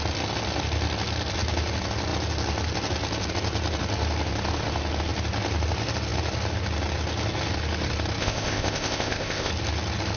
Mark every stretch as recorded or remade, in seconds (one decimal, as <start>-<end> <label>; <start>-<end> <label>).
0.0-8.2 recorded; 8.2-9.5 remade; 9.5-10.2 recorded